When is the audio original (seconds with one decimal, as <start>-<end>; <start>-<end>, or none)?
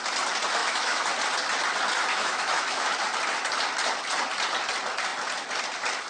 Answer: 0.0-0.6; 1.1-2.1; 2.9-6.1